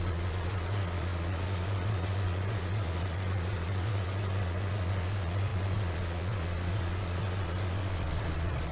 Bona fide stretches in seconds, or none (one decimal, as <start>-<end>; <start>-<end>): none